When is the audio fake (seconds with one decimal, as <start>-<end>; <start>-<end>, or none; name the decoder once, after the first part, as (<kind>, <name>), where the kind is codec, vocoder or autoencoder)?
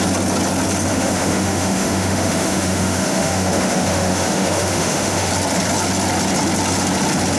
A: 0.9-5.3 (autoencoder, DAC-VAE)